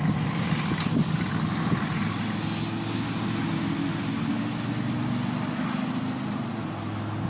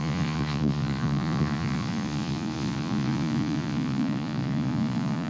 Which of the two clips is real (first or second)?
first